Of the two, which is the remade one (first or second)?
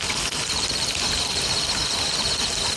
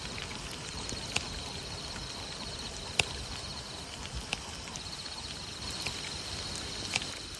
second